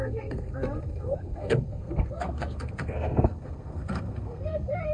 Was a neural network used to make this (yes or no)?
yes